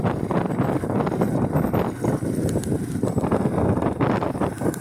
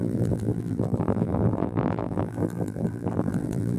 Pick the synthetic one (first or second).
second